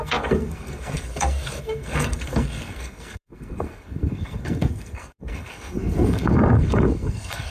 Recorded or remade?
remade